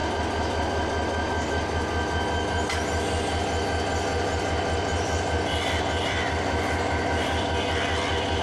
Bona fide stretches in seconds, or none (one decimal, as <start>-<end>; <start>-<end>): 0.0-4.9; 7.4-8.4